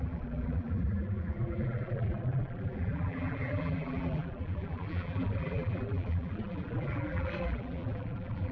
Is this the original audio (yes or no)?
no